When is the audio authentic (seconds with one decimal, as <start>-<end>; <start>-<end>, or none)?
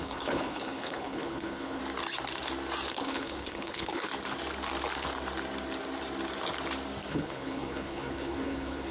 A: 1.8-2.9; 4.1-7.1